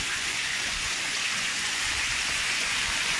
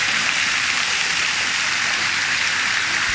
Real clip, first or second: second